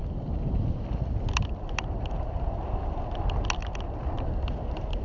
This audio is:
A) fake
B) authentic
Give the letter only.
B